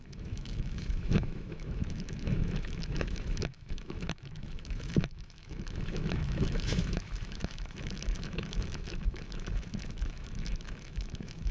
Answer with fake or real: fake